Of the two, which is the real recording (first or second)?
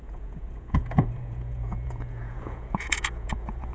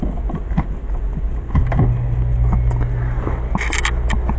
second